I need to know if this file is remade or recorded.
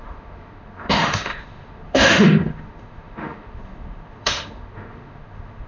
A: remade